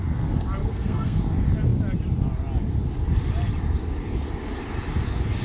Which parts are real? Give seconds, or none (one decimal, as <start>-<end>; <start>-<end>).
0.0-0.6; 1.2-5.4